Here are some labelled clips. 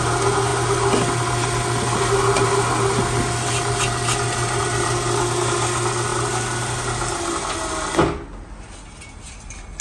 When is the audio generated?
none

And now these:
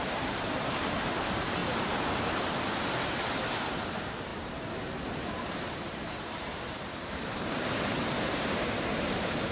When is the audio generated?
0.0-1.6 (vocoder, BigVGAN v2); 3.5-9.5

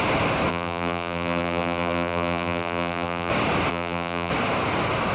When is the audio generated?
0.5-3.3 (vocoder, BigVGAN v2); 3.7-4.3

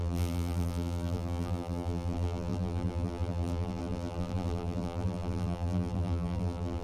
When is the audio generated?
0.0-6.8 (vocoder, BigVGAN v2)

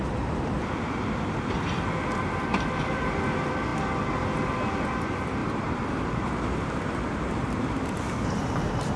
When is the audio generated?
2.5-3.2 (vocoder, BigVGAN v2); 5.4-9.0

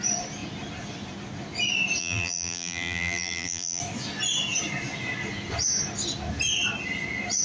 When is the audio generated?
2.0-3.8 (vocoder, BigVGAN v2)